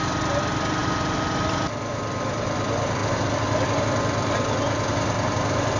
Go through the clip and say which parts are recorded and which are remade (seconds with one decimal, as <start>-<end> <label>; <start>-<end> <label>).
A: 0.0-5.8 recorded